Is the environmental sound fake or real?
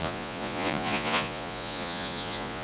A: fake